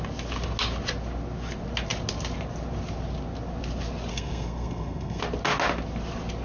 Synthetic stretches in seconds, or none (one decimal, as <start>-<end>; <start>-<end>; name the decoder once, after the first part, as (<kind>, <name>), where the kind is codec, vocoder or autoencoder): 4.1-5.2 (codec, SNAC)